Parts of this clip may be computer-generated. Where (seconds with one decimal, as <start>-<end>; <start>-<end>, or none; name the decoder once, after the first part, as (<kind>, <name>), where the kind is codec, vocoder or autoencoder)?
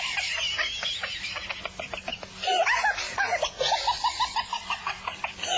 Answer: none